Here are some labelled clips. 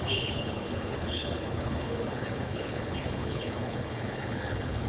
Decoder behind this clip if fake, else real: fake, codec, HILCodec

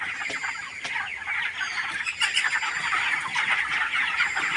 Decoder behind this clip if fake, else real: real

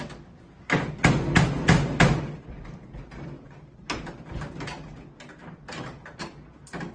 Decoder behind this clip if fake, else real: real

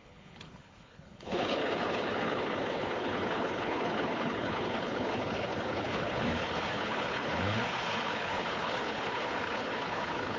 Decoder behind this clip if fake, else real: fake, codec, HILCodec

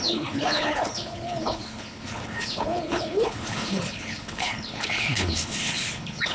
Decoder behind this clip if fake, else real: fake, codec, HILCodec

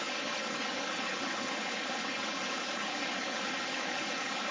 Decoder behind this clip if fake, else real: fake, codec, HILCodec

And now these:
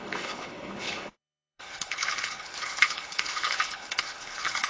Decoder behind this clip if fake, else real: fake, codec, HILCodec